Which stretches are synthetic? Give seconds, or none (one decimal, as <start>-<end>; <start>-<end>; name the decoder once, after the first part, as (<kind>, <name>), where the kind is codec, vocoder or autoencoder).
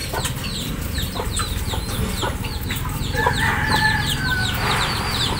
3.2-5.4 (vocoder, BigVGAN v2)